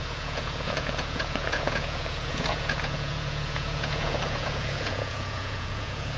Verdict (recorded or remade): remade